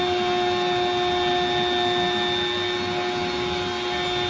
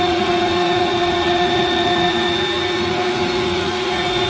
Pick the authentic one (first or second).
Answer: first